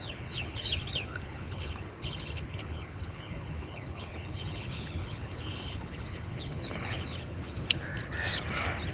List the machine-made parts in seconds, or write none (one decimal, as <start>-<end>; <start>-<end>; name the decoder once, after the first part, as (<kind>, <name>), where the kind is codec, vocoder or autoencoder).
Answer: 0.0-7.9 (codec, HILCodec)